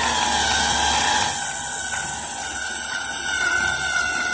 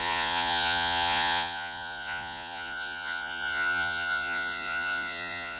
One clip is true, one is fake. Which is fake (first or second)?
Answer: second